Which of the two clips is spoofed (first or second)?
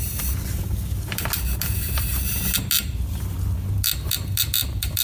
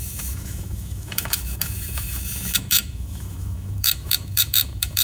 second